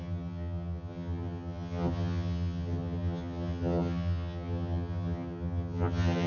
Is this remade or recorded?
remade